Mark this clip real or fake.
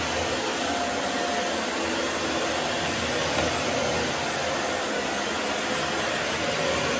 real